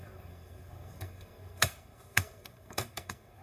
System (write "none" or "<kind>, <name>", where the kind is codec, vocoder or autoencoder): codec, SNAC